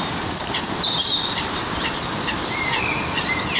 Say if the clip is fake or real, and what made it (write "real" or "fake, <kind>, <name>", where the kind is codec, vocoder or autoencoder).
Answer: fake, vocoder, BigVGAN v2